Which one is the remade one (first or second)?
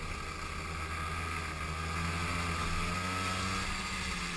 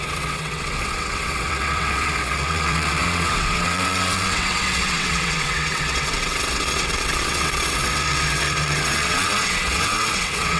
second